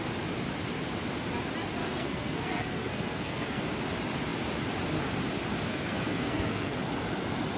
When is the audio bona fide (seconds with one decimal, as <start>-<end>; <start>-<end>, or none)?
0.0-1.8; 3.6-5.7; 6.8-7.6